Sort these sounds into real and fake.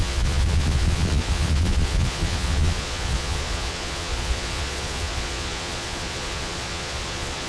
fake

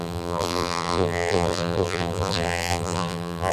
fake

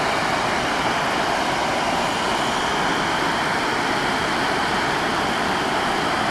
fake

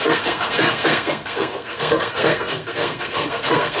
fake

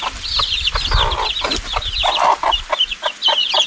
fake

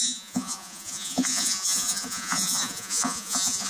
fake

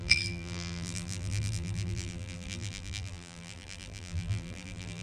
fake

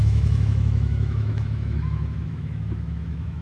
fake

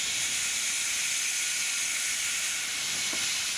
real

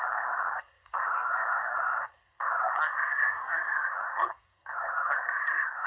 fake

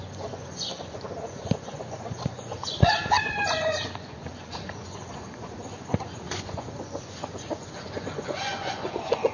fake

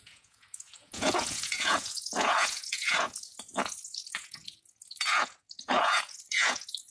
fake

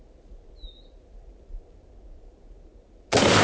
real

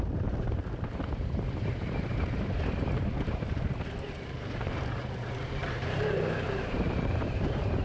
fake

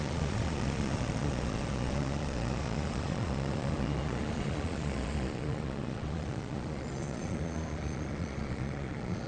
fake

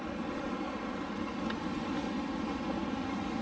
real